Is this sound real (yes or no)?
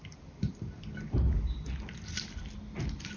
yes